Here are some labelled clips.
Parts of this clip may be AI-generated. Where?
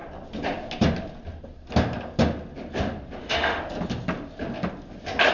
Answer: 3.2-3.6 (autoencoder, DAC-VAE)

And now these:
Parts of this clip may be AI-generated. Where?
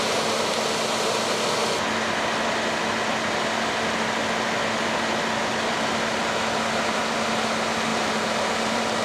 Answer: 7.9-9.0 (vocoder, BigVGAN v2)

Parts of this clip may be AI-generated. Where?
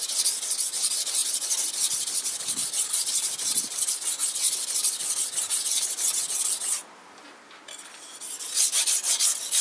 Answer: none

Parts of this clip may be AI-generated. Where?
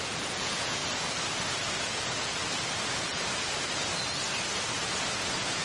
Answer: 0.0-0.8 (vocoder, Vocos); 1.8-2.4; 3.0-3.9; 5.0-5.6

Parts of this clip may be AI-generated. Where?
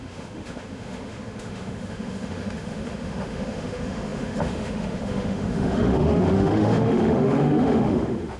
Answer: 0.0-8.4 (autoencoder, DAC-VAE)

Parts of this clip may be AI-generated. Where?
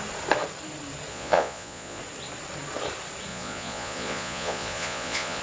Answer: 1.1-2.0 (vocoder, Vocos); 3.3-5.4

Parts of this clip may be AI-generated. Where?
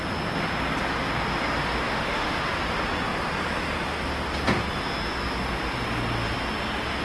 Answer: 1.6-2.5 (autoencoder, DAC-VAE)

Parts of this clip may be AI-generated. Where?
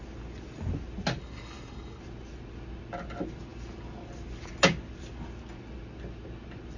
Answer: 1.2-2.0 (codec, SNAC)